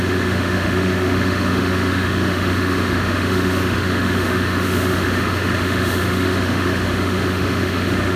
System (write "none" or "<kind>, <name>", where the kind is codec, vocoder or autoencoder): autoencoder, DAC-VAE